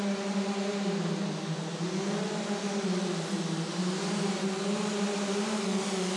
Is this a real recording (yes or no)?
yes